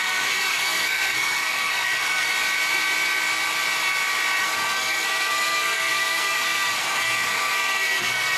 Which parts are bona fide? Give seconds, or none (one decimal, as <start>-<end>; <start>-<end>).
2.3-4.4